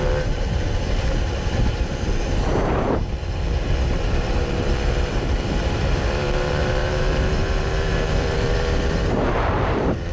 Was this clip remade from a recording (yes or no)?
yes